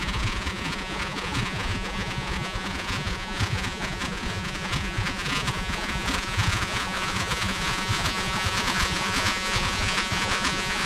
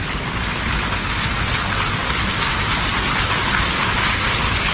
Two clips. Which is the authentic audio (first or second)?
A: second